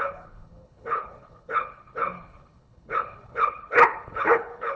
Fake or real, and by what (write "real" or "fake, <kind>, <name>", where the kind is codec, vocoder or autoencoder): fake, codec, HILCodec